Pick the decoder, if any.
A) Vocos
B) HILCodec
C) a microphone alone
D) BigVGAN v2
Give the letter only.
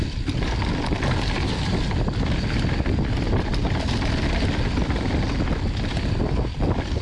C